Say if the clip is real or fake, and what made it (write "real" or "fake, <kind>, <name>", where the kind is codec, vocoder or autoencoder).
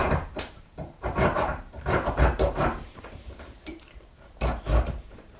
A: fake, vocoder, BigVGAN v2